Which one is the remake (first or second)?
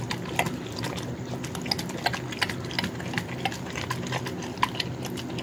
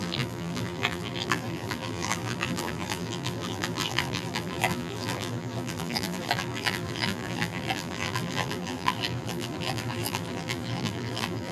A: second